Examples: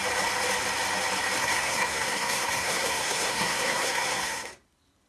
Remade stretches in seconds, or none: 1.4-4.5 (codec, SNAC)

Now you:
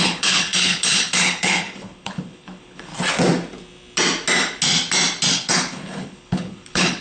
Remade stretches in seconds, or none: 0.0-2.9 (codec, HILCodec); 5.3-7.0